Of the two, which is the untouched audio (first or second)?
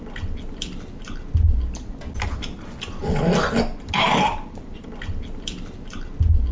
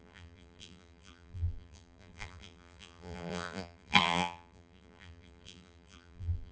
first